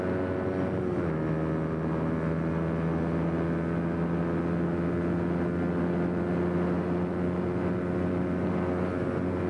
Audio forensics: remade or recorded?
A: recorded